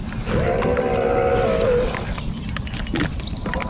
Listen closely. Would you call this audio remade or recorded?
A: recorded